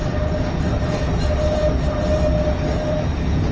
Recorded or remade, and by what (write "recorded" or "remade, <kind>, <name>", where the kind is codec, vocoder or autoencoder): recorded